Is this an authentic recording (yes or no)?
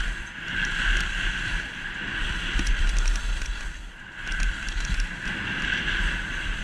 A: no